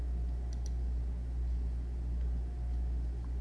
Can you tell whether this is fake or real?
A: real